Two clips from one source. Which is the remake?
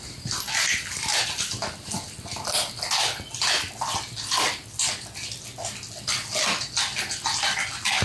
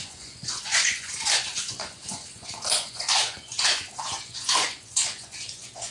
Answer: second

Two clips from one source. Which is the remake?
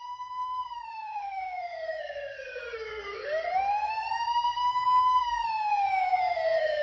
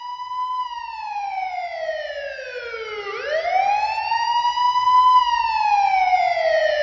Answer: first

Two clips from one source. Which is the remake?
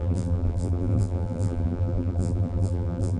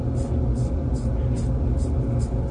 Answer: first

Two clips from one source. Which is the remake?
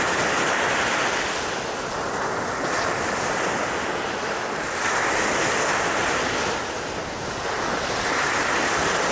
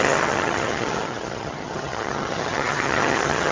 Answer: second